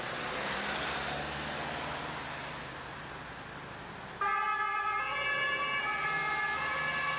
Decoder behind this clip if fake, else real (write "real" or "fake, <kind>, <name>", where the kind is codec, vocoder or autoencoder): real